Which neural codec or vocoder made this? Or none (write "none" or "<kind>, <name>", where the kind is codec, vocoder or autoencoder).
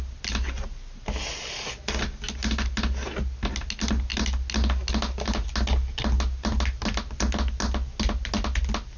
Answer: none